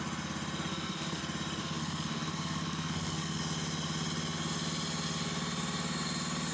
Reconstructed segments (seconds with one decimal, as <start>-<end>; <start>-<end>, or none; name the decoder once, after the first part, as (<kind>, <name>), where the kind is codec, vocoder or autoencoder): 0.7-1.2 (codec, SNAC); 1.6-3.4